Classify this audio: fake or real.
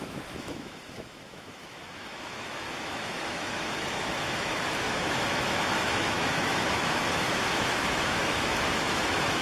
fake